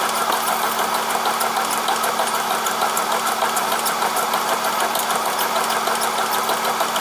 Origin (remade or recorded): recorded